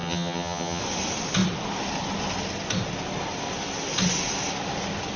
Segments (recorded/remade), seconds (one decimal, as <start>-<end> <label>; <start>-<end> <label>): 0.0-0.8 remade; 0.8-5.2 recorded